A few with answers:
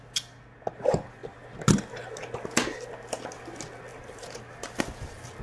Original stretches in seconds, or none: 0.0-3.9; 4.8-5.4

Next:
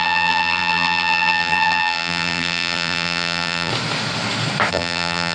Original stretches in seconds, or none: 3.7-4.7